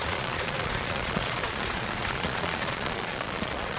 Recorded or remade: remade